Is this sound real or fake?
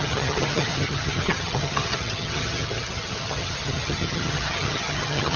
fake